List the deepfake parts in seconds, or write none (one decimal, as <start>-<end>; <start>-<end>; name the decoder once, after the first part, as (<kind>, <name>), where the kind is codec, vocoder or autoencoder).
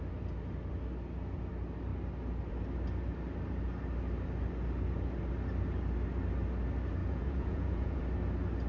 7.0-8.0 (vocoder, Vocos)